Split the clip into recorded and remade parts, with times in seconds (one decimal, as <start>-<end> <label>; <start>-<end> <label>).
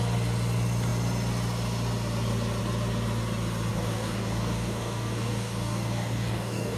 0.0-3.7 recorded; 3.7-6.8 remade